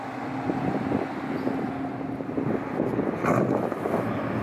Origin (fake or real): real